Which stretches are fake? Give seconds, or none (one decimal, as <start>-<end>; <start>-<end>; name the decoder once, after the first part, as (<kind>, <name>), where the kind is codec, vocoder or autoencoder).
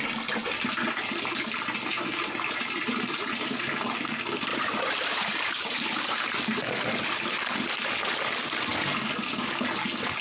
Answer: 1.9-4.0 (vocoder, BigVGAN v2); 4.5-7.9